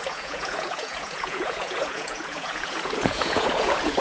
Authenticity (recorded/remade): remade